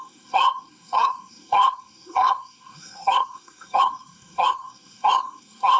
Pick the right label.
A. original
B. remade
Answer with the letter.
B